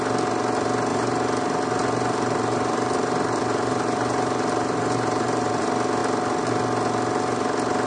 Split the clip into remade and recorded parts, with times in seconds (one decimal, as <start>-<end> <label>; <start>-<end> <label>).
0.0-0.9 recorded; 0.9-5.6 remade; 5.6-7.9 recorded